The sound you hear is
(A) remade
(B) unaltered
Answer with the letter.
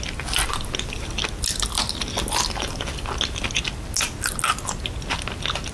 B